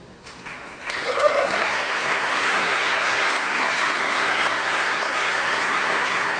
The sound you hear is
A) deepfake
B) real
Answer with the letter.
A